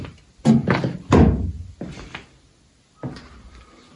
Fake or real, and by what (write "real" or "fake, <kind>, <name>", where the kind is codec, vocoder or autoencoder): real